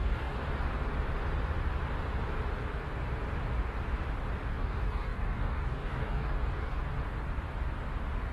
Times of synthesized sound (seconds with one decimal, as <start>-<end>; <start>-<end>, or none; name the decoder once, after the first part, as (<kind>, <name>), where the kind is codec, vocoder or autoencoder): 0.0-0.4 (codec, DAC); 4.5-6.8

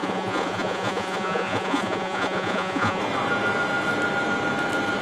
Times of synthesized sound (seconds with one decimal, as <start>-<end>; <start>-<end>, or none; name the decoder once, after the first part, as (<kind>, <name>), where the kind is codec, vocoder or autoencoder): 0.0-3.0 (vocoder, Vocos)

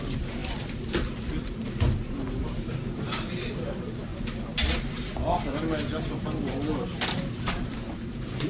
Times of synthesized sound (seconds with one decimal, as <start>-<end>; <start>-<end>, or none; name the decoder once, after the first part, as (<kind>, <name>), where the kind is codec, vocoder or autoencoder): 0.0-0.4 (vocoder, BigVGAN v2); 2.4-4.1; 7.8-8.5

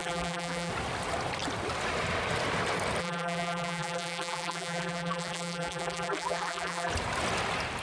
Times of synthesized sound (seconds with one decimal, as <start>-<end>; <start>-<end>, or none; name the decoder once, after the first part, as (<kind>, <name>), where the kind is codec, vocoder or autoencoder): 0.0-0.7 (vocoder, BigVGAN v2); 3.0-6.9

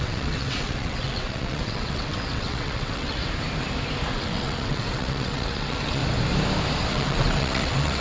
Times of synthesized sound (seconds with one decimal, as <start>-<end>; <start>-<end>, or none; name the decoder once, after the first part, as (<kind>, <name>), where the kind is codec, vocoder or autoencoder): 0.0-3.2 (vocoder, WaveNeXt); 4.1-6.0; 6.9-8.0

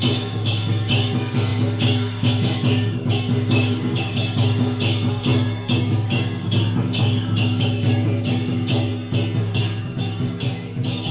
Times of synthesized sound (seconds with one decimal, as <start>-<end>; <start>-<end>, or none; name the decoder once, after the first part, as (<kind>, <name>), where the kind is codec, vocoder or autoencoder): 0.0-8.9 (codec, DAC); 9.4-11.1